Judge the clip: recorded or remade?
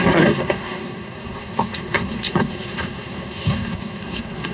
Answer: remade